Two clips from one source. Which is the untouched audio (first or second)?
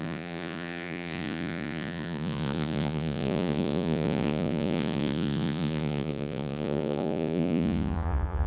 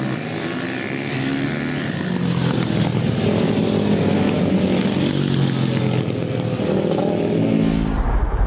second